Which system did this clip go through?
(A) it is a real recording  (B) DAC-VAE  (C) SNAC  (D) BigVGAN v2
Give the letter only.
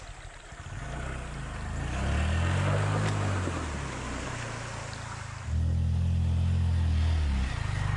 A